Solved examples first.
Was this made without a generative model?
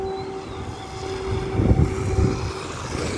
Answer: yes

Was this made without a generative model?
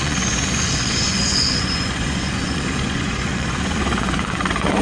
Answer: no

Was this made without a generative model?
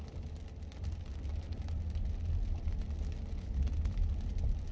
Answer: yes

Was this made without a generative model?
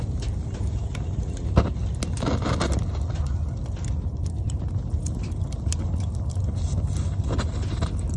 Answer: yes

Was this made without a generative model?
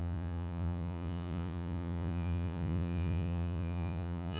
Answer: no